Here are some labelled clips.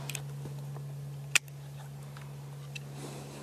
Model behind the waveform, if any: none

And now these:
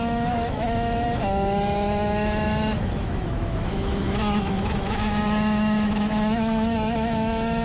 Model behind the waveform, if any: autoencoder, DAC-VAE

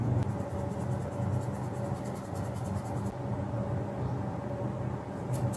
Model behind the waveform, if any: none